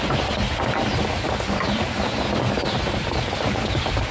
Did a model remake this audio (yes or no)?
yes